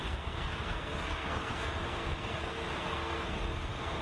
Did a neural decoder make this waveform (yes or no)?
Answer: yes